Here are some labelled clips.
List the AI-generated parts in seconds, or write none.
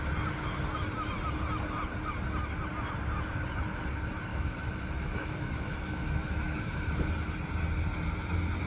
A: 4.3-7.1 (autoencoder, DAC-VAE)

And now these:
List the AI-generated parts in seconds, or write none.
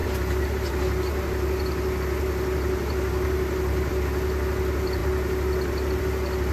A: none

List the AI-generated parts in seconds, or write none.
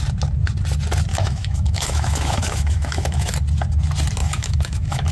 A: 1.1-3.3 (autoencoder, DAC-VAE); 4.2-5.1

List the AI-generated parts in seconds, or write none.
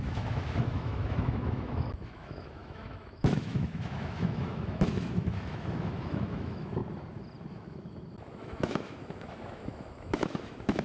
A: 0.0-6.8 (autoencoder, DAC-VAE); 7.5-10.8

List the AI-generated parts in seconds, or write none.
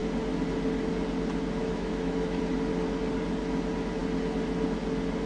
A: 1.6-2.4 (autoencoder, DAC-VAE)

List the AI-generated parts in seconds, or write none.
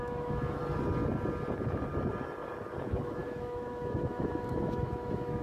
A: 0.0-0.6 (autoencoder, DAC-VAE); 2.8-5.4